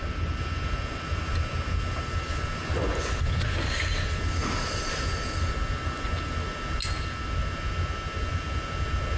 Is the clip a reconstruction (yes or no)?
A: no